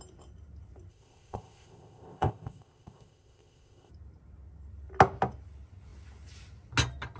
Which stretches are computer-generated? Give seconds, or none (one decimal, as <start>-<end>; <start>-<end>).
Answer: 0.9-3.9